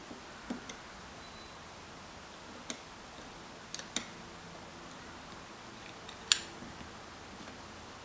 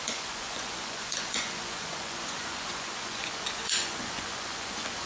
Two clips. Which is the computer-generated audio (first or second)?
second